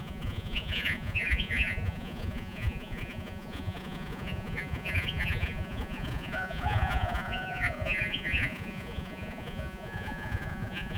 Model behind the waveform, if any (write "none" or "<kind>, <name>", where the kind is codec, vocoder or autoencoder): vocoder, Vocos